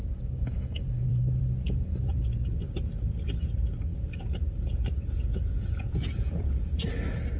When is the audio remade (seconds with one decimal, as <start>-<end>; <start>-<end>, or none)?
0.0-2.2; 3.9-6.4